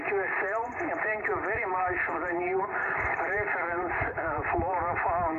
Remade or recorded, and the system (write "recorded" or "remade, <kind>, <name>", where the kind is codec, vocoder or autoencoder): remade, vocoder, BigVGAN v2